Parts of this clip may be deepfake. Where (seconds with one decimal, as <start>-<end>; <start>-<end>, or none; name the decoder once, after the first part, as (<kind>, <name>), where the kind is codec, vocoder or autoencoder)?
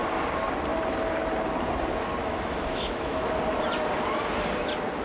2.2-3.3 (autoencoder, DAC-VAE)